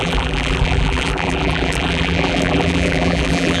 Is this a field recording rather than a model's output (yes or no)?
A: no